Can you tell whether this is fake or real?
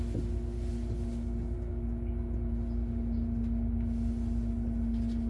real